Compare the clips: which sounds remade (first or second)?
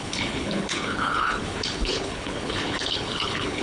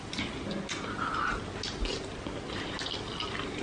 first